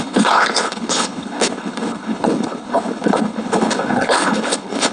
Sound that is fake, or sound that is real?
fake